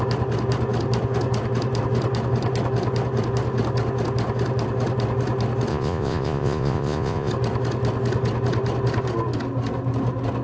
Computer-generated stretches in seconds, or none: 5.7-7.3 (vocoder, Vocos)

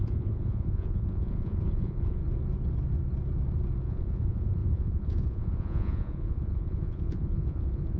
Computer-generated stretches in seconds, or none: 0.0-2.2 (vocoder, Vocos); 3.8-8.0

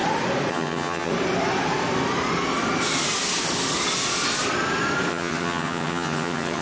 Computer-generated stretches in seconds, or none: 0.5-1.1 (vocoder, HiFi-GAN); 5.1-6.6

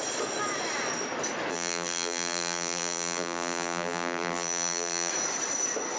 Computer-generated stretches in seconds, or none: 1.5-5.1 (vocoder, BigVGAN v2)

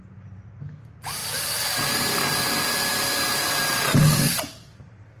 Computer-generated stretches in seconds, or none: none

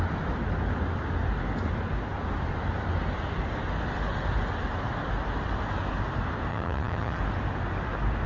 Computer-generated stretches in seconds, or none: 6.5-7.2 (vocoder, HiFi-GAN)

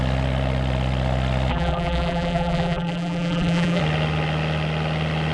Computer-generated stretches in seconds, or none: 1.5-3.8 (vocoder, BigVGAN v2)